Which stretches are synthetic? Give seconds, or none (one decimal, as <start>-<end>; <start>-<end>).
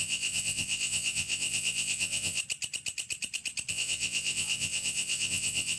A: 0.0-2.4; 3.7-5.8